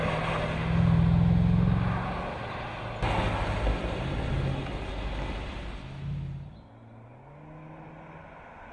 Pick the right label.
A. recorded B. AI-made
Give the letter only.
A